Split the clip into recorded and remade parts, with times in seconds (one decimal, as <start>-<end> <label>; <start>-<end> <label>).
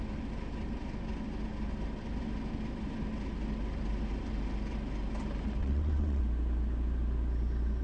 0.0-5.6 recorded; 5.6-6.2 remade; 6.2-7.8 recorded